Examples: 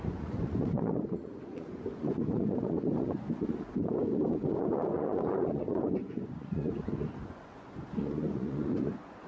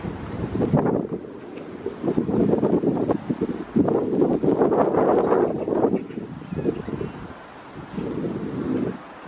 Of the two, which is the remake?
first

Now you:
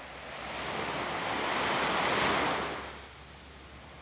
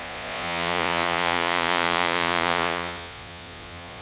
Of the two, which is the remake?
second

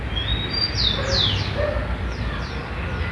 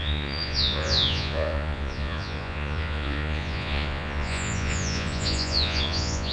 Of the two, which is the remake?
second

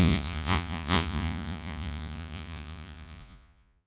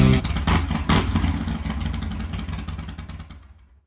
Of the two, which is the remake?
first